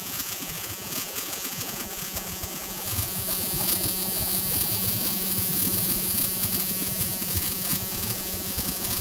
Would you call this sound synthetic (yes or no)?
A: yes